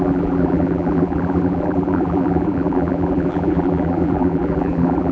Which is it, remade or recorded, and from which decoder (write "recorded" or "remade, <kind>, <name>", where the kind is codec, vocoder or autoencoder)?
remade, vocoder, BigVGAN v2